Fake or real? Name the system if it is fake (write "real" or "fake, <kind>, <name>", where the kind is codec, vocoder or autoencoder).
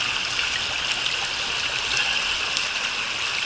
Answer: real